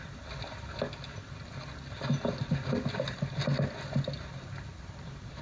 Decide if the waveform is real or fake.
real